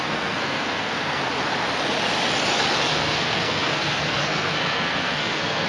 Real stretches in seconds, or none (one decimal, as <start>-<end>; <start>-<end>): 1.2-2.9